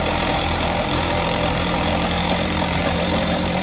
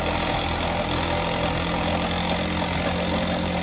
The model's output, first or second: first